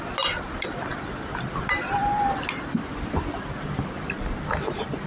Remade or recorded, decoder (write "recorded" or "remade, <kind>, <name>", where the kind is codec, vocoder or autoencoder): recorded